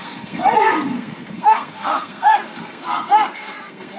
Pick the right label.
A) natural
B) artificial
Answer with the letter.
B